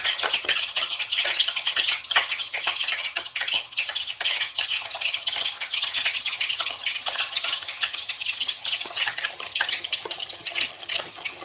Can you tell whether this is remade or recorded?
remade